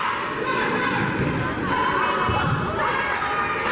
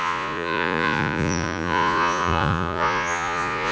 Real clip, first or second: first